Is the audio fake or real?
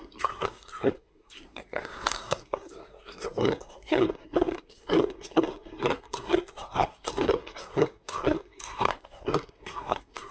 fake